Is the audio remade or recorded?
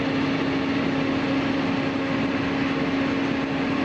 recorded